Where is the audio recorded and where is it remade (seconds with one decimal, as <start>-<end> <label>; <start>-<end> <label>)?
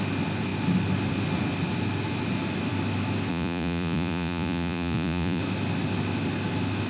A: 0.0-3.3 recorded; 3.3-5.4 remade; 5.4-6.9 recorded